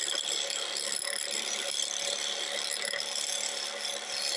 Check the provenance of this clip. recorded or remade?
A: recorded